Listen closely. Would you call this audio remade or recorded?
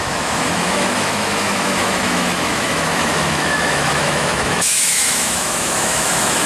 remade